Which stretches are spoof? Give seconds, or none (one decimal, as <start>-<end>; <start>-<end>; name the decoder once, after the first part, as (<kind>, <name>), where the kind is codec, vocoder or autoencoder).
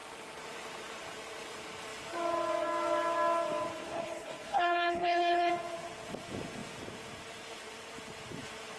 3.7-5.5 (codec, HILCodec)